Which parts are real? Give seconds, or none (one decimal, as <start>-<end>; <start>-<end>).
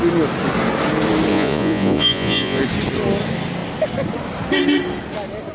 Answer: 0.0-1.3; 2.6-5.5